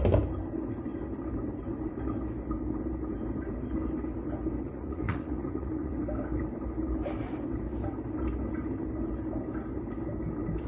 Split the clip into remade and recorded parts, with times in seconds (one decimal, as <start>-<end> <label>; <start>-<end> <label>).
0.0-4.7 recorded; 4.7-5.9 remade; 5.9-10.7 recorded